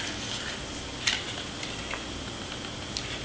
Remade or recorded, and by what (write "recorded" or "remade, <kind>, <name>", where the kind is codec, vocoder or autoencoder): recorded